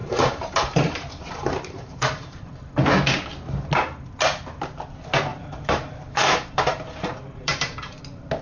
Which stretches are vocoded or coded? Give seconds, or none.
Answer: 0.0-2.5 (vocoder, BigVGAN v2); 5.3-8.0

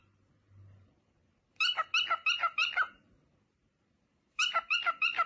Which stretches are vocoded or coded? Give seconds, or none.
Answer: 0.0-1.9 (vocoder, BigVGAN v2); 2.4-5.3